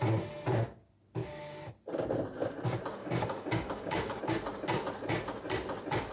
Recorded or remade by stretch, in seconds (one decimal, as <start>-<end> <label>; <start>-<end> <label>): 0.0-1.2 recorded; 1.2-1.7 remade; 1.7-3.0 recorded; 3.0-4.2 remade; 4.2-6.1 recorded